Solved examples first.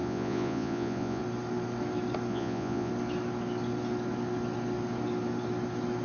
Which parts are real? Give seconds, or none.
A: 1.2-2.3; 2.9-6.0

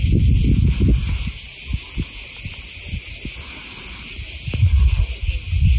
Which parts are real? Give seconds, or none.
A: 0.0-5.8

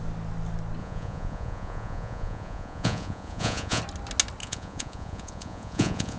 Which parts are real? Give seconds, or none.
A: 0.0-0.8; 3.8-4.4

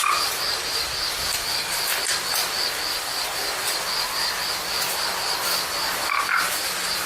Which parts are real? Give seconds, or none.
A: 0.0-7.1

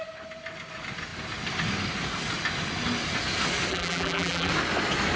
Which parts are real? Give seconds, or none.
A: 0.0-3.7; 4.5-5.2

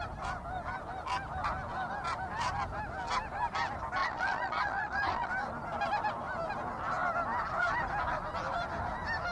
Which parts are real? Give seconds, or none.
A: 0.0-4.0; 5.3-9.3

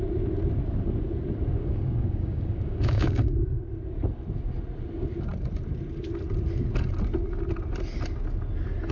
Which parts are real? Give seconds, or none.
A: 0.0-1.6; 3.6-8.9